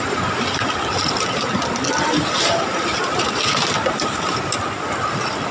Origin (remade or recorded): recorded